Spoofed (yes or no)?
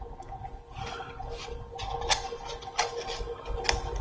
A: no